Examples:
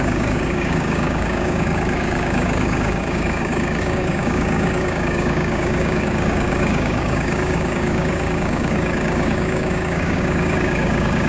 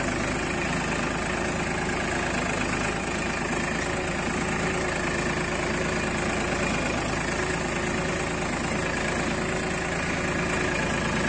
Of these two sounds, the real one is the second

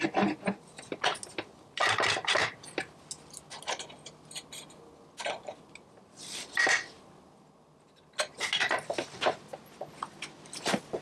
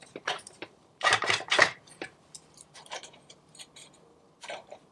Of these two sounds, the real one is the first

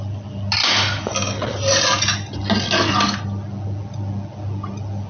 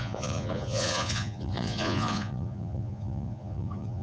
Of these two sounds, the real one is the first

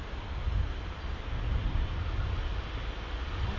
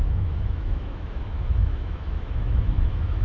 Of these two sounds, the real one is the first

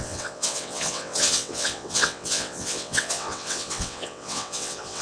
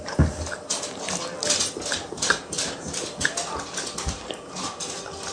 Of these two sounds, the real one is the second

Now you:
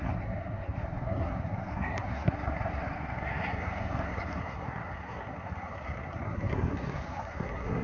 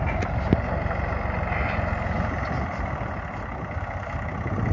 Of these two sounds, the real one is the second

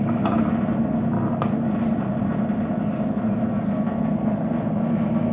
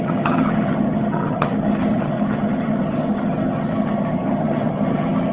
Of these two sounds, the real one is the first